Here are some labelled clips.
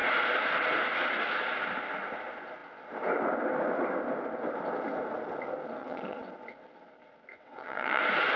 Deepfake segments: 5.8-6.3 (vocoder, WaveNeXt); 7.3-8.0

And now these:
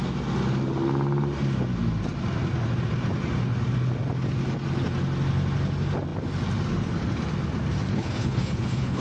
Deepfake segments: 7.9-9.0 (codec, HILCodec)

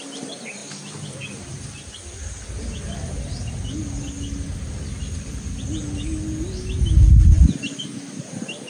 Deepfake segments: none

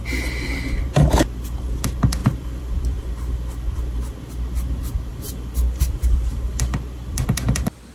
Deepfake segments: 2.2-3.0 (vocoder, BigVGAN v2); 5.1-7.9

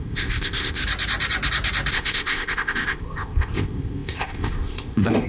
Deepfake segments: 0.0-0.8 (codec, ZipCodec); 1.9-5.3

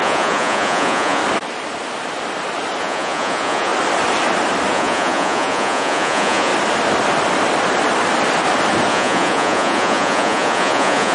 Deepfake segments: 0.0-1.2 (vocoder, Vocos); 2.8-3.7; 4.7-6.5; 8.9-11.1

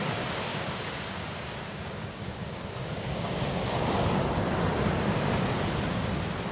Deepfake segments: 0.5-3.8 (codec, DAC)

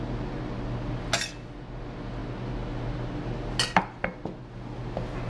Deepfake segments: none